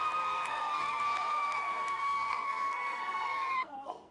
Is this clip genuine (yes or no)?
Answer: no